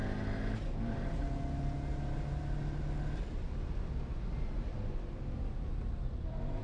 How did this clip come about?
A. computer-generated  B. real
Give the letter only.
B